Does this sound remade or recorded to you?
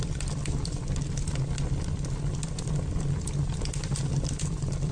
recorded